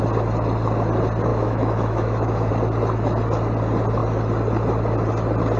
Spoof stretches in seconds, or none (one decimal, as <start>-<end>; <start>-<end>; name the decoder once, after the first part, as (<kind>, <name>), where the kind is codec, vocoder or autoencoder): 1.3-2.5 (autoencoder, DAC-VAE)

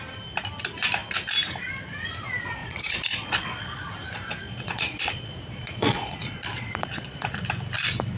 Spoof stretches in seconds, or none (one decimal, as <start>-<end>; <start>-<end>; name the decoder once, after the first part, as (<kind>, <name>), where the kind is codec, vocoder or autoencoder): 2.6-3.8 (vocoder, Vocos); 4.4-7.4

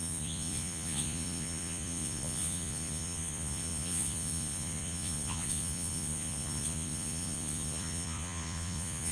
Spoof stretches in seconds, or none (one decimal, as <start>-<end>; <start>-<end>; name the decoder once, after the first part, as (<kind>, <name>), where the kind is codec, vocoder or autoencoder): 0.0-9.1 (vocoder, Vocos)

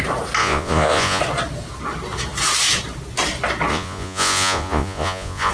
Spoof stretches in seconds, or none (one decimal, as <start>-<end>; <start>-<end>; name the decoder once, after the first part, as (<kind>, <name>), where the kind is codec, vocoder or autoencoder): 0.4-1.2 (vocoder, Vocos); 3.7-5.5

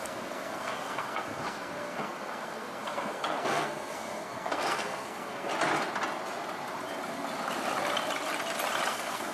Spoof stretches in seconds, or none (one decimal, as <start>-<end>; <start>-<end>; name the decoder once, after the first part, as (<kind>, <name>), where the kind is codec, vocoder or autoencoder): 0.0-5.5 (codec, SNAC); 8.9-9.3

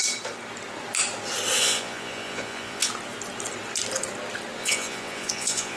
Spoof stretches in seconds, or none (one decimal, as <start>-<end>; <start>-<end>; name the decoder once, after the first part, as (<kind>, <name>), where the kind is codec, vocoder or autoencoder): 1.6-2.9 (vocoder, Vocos); 4.6-5.8